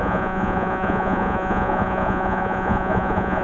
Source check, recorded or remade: remade